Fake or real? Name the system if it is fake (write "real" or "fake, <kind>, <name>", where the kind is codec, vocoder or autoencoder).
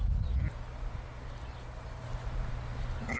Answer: real